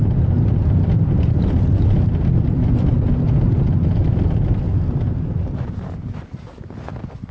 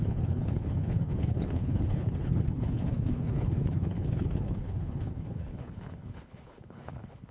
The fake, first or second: second